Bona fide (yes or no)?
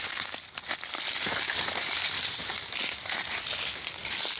yes